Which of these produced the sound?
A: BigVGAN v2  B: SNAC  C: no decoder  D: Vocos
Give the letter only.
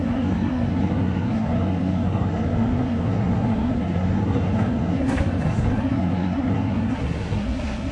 B